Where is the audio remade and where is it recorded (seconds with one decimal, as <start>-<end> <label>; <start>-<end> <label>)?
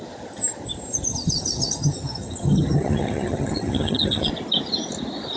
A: 0.0-1.1 recorded; 1.1-4.3 remade; 4.3-5.4 recorded